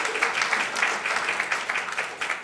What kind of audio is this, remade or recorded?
recorded